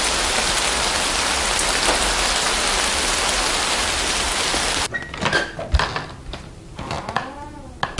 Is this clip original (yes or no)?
yes